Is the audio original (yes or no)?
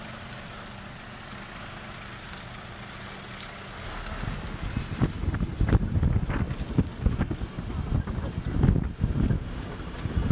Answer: yes